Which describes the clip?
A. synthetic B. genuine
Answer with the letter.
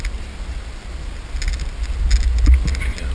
B